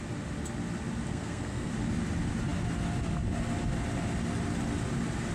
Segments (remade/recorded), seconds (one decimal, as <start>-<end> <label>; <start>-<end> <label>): 0.0-1.1 recorded; 1.1-1.7 remade; 1.7-5.3 recorded